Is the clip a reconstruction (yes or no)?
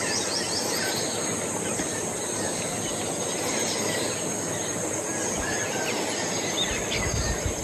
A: no